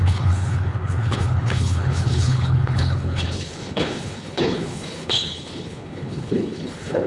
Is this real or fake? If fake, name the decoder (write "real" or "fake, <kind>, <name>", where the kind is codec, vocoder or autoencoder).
fake, codec, HILCodec